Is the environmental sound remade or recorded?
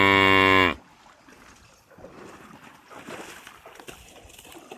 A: recorded